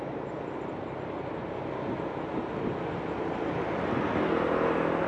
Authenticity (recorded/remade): recorded